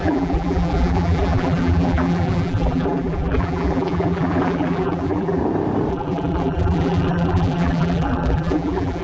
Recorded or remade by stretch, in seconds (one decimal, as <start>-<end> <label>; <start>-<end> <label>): 0.0-5.4 remade; 5.4-5.9 recorded; 5.9-9.0 remade